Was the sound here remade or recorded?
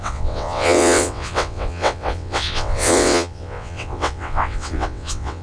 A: remade